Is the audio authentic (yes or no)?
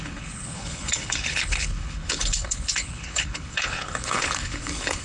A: no